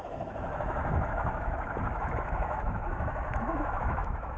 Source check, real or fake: fake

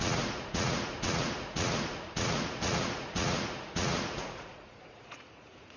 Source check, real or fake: fake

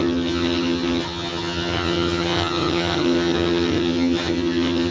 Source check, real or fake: fake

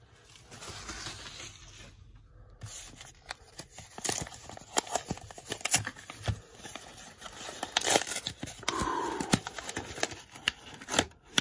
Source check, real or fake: real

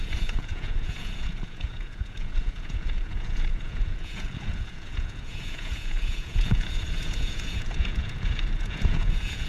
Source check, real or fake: fake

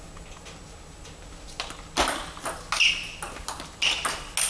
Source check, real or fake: real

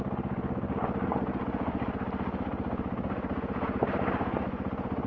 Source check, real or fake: real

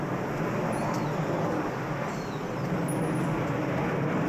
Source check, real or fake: real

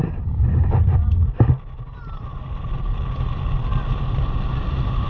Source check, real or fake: real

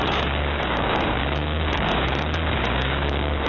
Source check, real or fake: fake